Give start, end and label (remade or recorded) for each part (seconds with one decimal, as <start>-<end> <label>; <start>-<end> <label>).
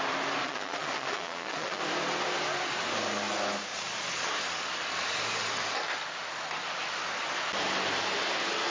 0.0-0.4 recorded; 0.4-1.8 remade; 1.8-3.7 recorded; 3.7-4.3 remade; 4.3-8.7 recorded